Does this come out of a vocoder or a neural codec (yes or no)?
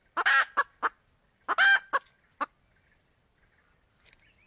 no